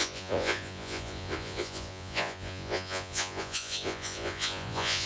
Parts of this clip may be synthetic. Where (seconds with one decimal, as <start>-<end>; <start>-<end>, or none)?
0.0-5.1